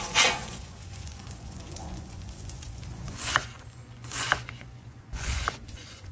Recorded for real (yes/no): no